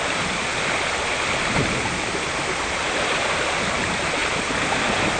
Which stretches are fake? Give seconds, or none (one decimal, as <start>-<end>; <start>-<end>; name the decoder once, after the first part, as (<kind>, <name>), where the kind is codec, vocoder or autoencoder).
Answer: none